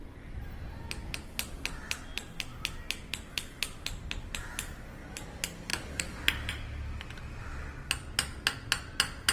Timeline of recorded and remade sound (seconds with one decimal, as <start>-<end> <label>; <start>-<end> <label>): 0.0-9.3 recorded